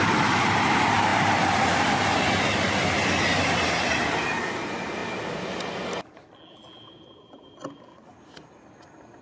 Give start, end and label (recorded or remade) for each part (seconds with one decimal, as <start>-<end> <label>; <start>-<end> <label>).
0.0-9.2 recorded